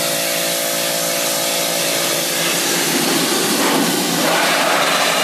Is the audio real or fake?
real